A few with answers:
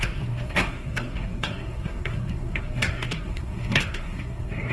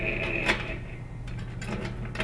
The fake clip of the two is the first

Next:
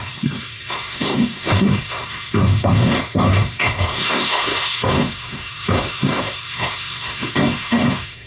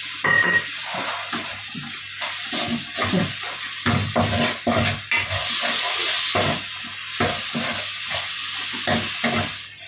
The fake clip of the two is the first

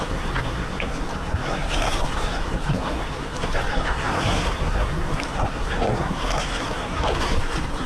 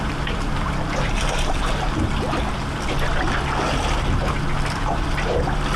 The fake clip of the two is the first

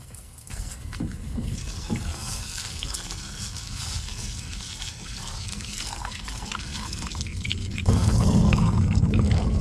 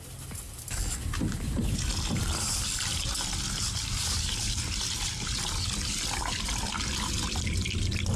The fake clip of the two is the first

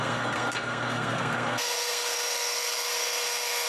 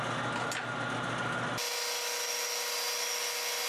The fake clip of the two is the first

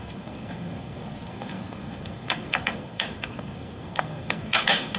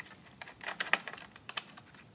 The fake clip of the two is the first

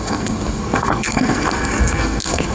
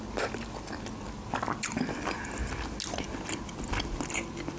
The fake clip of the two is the first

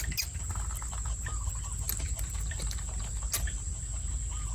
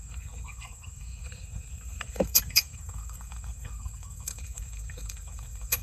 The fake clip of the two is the second